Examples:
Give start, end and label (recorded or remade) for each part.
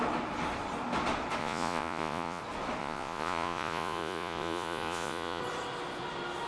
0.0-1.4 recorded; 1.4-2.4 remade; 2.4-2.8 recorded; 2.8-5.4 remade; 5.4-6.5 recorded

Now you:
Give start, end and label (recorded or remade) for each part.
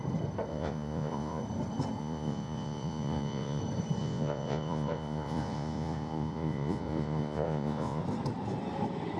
0.0-0.5 recorded; 0.5-1.4 remade; 1.4-2.0 recorded; 2.0-3.6 remade; 3.6-4.0 recorded; 4.0-8.0 remade; 8.0-9.2 recorded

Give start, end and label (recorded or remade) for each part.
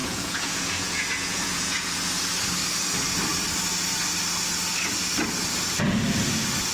0.0-2.1 remade; 2.1-6.7 recorded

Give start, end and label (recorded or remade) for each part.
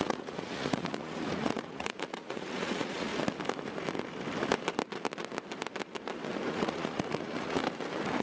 0.0-3.1 remade; 3.1-6.5 recorded; 6.5-7.6 remade; 7.6-8.2 recorded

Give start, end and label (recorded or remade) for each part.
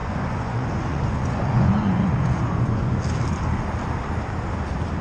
0.0-3.0 remade; 3.0-5.0 recorded